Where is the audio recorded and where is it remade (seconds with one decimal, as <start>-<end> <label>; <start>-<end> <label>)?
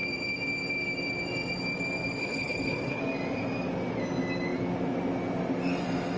0.0-2.2 recorded; 2.2-3.0 remade; 3.0-6.2 recorded